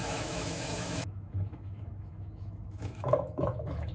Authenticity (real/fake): fake